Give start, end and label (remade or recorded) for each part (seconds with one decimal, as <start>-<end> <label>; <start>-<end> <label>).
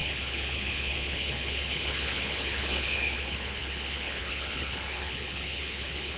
0.0-6.2 remade